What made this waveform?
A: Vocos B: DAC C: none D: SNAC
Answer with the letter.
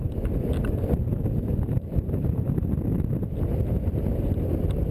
C